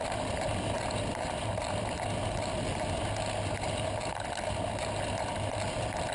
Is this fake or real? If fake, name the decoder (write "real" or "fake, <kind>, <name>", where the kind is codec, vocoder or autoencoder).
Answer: real